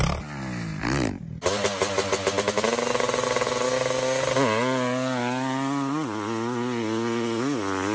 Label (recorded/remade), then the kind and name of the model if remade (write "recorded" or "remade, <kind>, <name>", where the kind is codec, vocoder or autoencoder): recorded